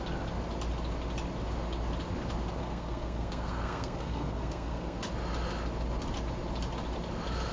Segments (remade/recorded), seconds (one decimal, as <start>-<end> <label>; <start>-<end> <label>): 0.0-2.6 recorded; 2.6-5.0 remade; 5.0-7.5 recorded